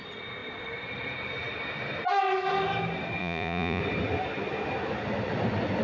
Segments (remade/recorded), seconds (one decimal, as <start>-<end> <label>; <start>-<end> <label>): 0.0-3.2 recorded; 3.2-3.8 remade; 3.8-5.8 recorded

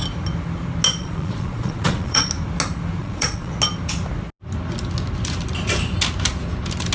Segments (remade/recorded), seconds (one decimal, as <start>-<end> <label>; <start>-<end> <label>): 0.0-1.0 recorded; 1.0-2.3 remade; 2.3-3.0 recorded; 3.0-3.5 remade; 3.5-6.9 recorded

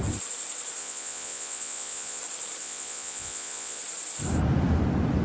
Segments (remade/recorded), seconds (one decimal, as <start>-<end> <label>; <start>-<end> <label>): 0.0-0.8 recorded; 0.8-2.2 remade; 2.2-2.6 recorded; 2.6-3.8 remade; 3.8-5.2 recorded

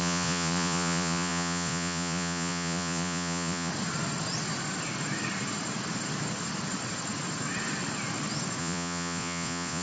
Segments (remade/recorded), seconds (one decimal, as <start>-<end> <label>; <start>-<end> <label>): 0.0-3.7 remade; 3.7-8.6 recorded; 8.6-9.8 remade

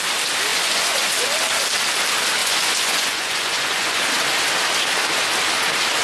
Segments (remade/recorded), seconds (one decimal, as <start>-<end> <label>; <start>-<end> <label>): 0.0-0.5 recorded; 0.5-1.1 remade; 1.1-2.4 recorded; 2.4-4.0 remade; 4.0-6.0 recorded

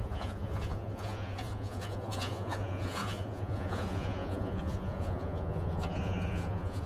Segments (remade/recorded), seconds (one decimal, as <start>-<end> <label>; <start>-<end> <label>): 0.0-6.9 remade